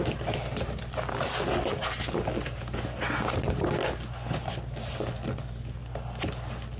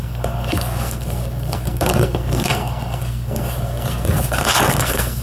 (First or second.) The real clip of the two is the first